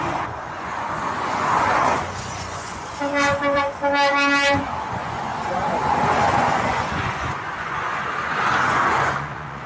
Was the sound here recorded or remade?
remade